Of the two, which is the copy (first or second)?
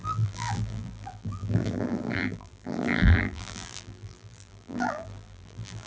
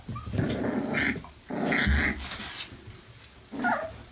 first